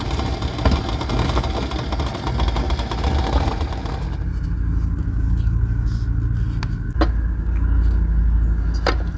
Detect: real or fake real